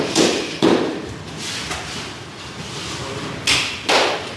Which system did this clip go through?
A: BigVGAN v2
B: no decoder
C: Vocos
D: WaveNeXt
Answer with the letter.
B